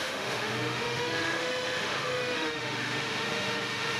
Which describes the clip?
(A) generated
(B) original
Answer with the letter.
A